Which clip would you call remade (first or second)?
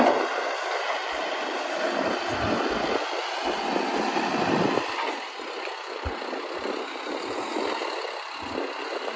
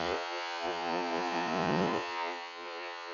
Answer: second